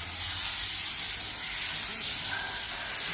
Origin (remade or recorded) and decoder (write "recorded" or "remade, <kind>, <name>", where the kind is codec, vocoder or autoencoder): recorded